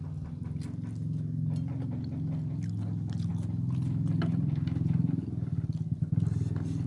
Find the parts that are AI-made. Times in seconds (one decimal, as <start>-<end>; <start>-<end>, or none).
none